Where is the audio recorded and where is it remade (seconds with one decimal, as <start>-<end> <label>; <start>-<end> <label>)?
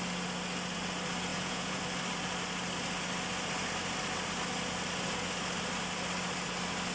0.0-1.3 recorded; 1.3-1.8 remade; 1.8-6.9 recorded